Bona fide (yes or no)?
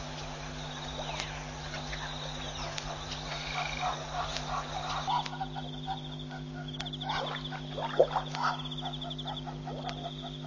yes